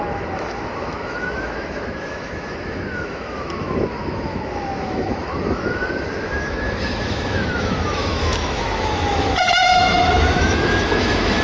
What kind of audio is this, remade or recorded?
remade